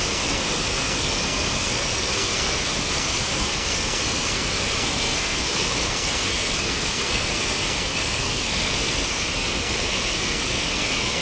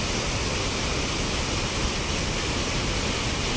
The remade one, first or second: first